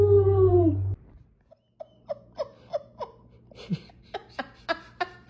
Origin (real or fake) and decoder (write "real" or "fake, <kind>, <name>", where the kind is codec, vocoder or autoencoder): real